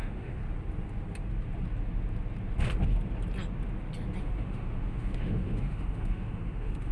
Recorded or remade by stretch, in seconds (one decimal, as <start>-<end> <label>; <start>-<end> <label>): 0.0-0.4 remade; 0.4-4.2 recorded; 4.2-6.9 remade